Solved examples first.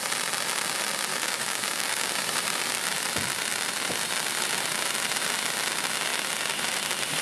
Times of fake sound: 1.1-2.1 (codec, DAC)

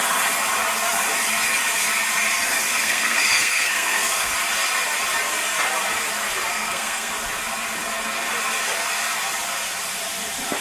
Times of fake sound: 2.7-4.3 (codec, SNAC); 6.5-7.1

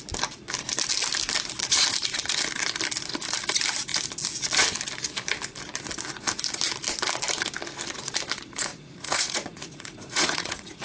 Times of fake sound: 8.7-10.8 (vocoder, Vocos)

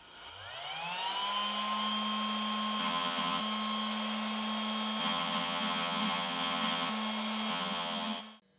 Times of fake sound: 2.8-3.4 (vocoder, HiFi-GAN); 5.0-6.9; 7.5-8.2

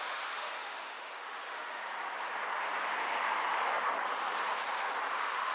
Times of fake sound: 0.0-1.8 (autoencoder, DAC-VAE); 5.1-5.5

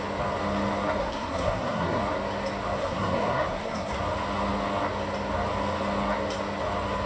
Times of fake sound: 1.0-2.0 (codec, SNAC); 2.8-4.0

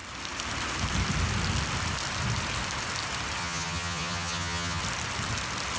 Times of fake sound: 3.4-4.8 (vocoder, HiFi-GAN)

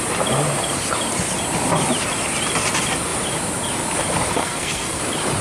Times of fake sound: 4.4-5.0 (codec, SNAC)